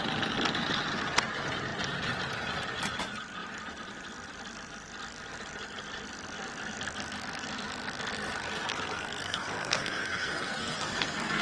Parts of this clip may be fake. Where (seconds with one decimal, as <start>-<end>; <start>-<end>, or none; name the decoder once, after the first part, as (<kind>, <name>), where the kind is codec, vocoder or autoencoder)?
8.7-11.4 (codec, SNAC)